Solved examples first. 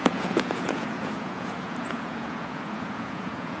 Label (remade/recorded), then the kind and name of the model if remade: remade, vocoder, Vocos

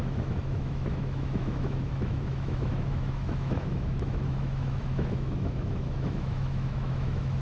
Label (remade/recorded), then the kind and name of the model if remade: remade, autoencoder, DAC-VAE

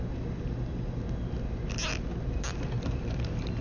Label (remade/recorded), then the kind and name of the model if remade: recorded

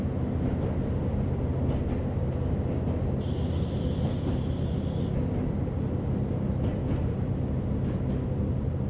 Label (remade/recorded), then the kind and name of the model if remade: recorded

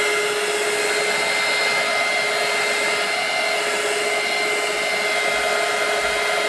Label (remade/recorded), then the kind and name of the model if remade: recorded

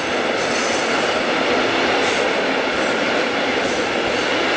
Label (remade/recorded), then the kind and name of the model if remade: recorded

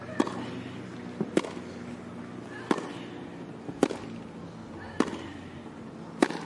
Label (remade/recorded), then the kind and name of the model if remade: recorded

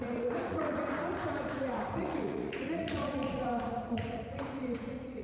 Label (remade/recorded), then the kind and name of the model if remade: remade, vocoder, Vocos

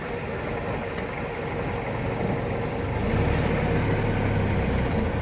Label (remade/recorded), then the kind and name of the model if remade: recorded